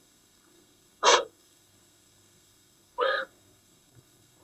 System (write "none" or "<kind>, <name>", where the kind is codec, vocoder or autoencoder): codec, SNAC